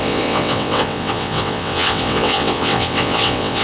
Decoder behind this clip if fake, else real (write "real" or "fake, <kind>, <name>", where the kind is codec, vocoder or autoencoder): fake, vocoder, WaveNeXt